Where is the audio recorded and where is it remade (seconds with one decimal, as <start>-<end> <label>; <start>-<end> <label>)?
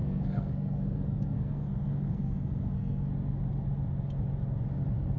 0.0-3.1 remade; 3.1-5.2 recorded